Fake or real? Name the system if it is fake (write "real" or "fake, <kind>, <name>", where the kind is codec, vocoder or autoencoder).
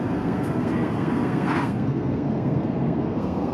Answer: fake, codec, SNAC